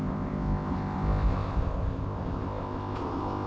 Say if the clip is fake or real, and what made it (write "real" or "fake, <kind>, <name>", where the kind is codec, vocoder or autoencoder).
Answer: fake, codec, ZipCodec